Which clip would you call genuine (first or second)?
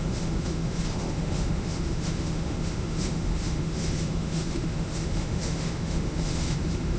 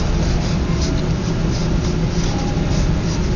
second